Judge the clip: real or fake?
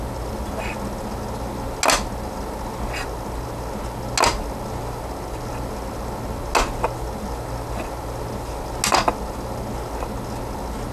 real